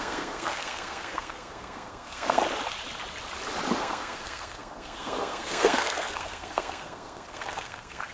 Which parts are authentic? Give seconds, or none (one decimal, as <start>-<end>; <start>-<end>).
2.4-3.8